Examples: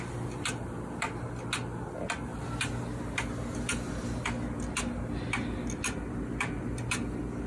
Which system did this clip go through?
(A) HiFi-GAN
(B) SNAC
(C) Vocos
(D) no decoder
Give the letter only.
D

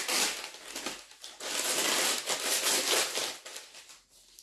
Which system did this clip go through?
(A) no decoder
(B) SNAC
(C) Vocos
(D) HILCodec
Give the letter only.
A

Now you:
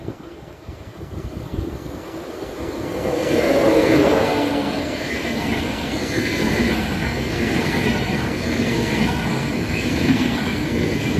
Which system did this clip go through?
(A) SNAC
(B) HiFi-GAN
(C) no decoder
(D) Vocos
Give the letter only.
A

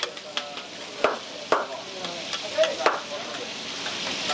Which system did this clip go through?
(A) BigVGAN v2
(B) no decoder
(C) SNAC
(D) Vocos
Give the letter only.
B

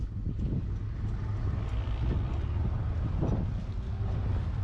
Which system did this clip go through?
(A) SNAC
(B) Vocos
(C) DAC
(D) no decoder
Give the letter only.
D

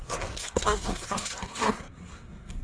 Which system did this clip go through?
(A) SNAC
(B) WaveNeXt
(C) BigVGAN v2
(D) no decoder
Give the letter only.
A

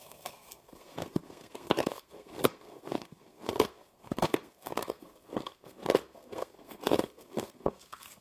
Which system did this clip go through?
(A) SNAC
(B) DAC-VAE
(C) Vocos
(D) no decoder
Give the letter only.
A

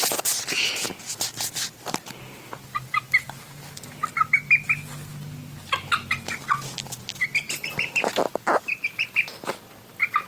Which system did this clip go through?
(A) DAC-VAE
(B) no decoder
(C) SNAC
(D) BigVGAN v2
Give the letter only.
B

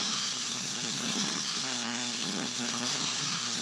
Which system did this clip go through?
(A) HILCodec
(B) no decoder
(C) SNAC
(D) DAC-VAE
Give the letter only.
C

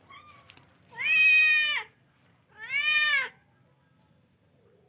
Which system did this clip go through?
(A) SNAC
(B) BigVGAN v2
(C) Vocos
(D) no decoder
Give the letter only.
D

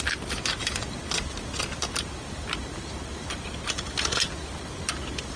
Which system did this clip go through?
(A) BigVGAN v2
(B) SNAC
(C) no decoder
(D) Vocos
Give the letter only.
C